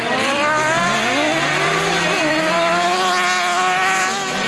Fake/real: real